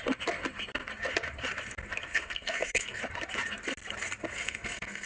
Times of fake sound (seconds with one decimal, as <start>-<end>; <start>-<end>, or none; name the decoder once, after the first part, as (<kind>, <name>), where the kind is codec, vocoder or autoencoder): 2.1-3.0 (codec, SNAC); 4.3-5.1